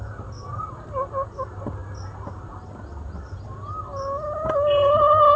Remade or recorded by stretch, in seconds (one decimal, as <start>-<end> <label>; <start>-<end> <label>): 0.0-5.4 recorded